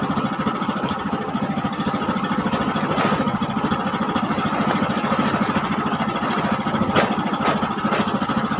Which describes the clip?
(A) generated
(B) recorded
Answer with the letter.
B